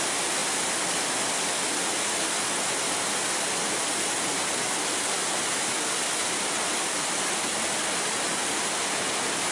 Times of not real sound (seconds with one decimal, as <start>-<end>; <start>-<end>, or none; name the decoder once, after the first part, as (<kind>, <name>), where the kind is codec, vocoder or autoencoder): none